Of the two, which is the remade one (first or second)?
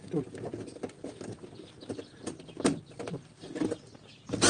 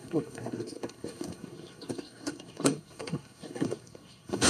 second